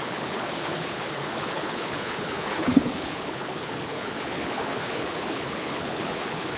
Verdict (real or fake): fake